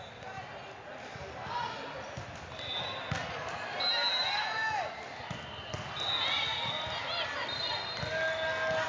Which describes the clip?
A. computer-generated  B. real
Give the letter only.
B